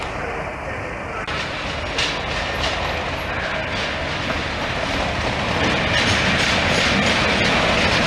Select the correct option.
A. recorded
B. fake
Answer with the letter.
A